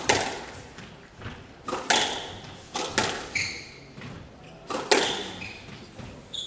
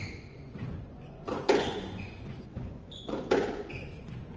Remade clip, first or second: second